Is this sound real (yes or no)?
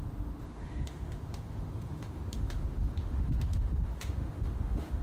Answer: no